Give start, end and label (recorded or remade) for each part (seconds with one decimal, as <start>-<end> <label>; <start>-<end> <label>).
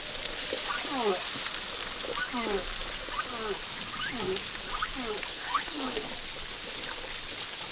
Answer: 0.0-5.3 recorded; 5.3-6.1 remade; 6.1-7.7 recorded